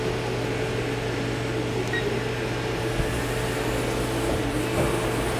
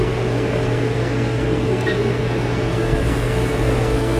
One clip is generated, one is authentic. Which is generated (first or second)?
second